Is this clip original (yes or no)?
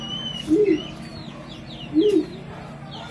yes